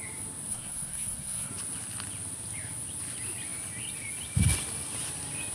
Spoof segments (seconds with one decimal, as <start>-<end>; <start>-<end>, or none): 0.5-1.5

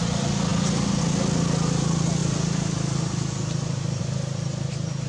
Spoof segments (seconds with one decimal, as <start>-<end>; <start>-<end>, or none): none

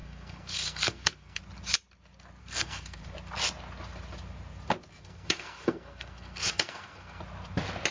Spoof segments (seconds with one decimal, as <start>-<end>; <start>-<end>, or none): 0.0-1.4; 2.4-3.0; 4.9-7.2

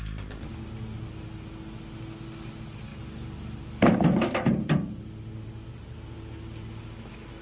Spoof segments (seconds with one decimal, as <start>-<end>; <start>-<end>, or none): none

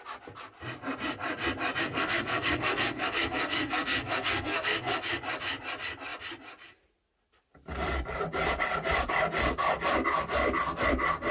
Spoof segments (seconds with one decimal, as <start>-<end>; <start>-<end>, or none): 1.8-5.0

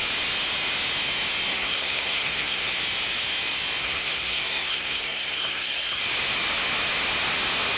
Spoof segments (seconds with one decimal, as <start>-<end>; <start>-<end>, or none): 1.5-2.7; 3.8-6.0

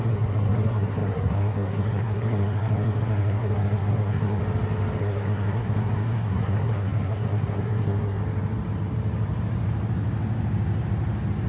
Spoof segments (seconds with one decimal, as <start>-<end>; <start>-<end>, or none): 0.0-4.4; 5.0-8.2